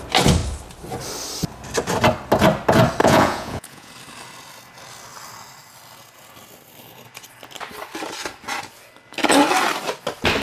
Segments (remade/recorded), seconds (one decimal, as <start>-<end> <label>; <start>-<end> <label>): 0.0-3.0 recorded; 3.0-3.9 remade; 3.9-10.4 recorded